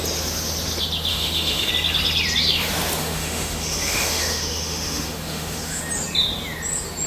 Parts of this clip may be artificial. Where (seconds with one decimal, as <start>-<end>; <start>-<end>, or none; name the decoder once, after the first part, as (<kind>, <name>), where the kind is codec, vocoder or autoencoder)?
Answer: 1.1-1.7 (autoencoder, DAC-VAE); 3.0-5.8